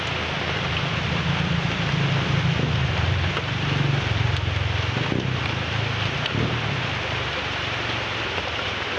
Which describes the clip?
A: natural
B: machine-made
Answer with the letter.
A